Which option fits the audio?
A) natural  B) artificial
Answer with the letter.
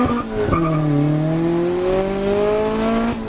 A